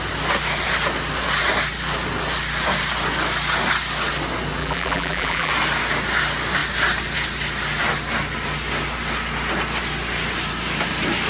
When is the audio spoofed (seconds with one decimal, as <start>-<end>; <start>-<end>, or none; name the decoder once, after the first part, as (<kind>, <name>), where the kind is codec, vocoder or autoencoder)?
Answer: 4.6-5.5 (vocoder, BigVGAN v2)